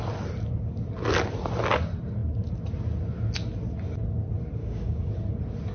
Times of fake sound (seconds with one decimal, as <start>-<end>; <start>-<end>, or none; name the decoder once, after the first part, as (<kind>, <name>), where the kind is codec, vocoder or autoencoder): 4.6-5.1 (codec, DAC)